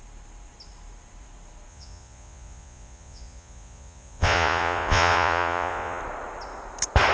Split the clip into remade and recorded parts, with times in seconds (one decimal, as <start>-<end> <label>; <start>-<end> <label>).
0.0-1.7 recorded; 1.7-6.0 remade; 6.0-7.1 recorded